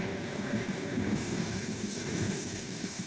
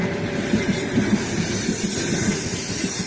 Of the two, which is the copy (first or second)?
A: first